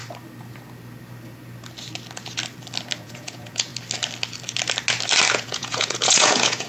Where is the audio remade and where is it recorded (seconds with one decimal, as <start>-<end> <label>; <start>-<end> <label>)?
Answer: 0.0-3.0 recorded; 3.0-3.7 remade; 3.7-5.3 recorded; 5.3-6.7 remade